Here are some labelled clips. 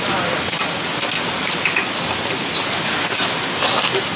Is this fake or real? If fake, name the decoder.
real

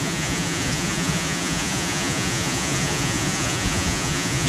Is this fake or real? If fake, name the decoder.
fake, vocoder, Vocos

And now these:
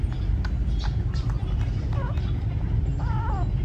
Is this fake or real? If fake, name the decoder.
real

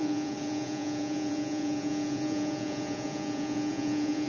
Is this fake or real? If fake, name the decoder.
fake, vocoder, Vocos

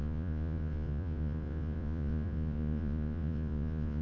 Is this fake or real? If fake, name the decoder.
fake, vocoder, Vocos